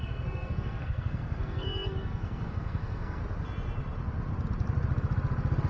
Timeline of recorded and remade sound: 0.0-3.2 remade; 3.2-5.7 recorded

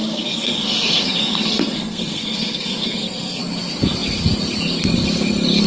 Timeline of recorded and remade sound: 0.0-3.4 remade; 3.4-5.7 recorded

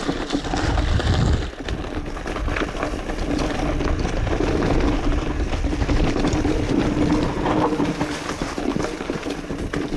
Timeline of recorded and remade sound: 0.0-10.0 recorded

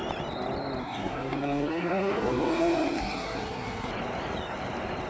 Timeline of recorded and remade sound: 0.0-0.8 recorded; 0.8-3.9 remade; 3.9-5.1 recorded

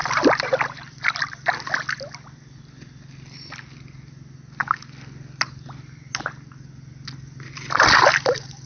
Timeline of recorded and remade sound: 0.0-8.7 recorded

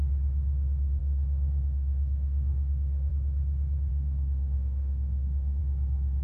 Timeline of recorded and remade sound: 0.0-1.0 recorded; 1.0-3.1 remade; 3.1-3.9 recorded; 3.9-5.6 remade; 5.6-6.2 recorded